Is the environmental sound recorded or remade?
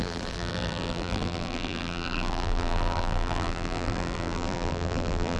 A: remade